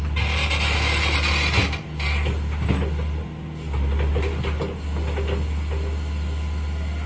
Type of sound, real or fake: real